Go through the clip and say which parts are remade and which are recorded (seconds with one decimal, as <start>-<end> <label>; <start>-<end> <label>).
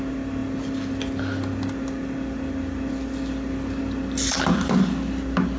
0.0-5.6 recorded